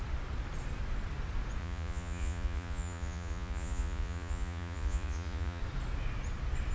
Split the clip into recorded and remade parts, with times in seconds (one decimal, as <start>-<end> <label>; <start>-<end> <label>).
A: 0.0-1.6 recorded; 1.6-5.6 remade; 5.6-6.7 recorded